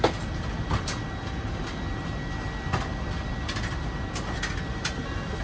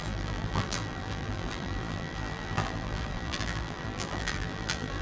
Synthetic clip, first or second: second